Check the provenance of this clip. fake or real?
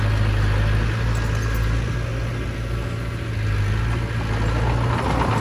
real